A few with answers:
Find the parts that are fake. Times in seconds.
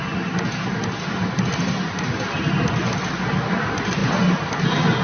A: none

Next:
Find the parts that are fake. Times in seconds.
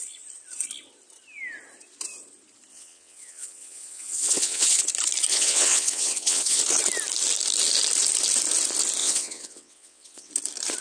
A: 2.7-4.8 (vocoder, WaveNeXt); 5.3-6.6; 9.0-10.3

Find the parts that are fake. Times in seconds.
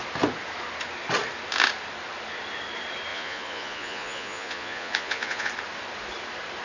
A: 3.1-5.5 (vocoder, Vocos)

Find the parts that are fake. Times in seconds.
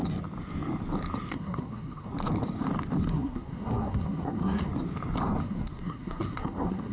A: 1.3-2.1 (codec, SNAC); 3.1-4.7; 5.4-6.9